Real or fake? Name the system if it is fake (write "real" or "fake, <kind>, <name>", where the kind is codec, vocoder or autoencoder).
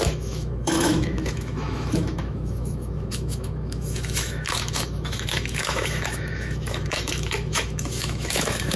fake, autoencoder, DAC-VAE